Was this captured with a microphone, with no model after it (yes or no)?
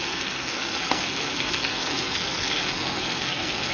no